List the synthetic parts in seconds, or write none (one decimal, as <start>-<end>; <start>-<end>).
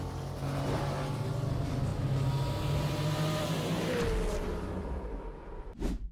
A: none